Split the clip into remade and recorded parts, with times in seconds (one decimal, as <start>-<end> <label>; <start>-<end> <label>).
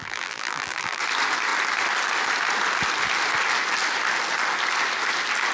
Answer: 0.0-1.0 remade; 1.0-5.5 recorded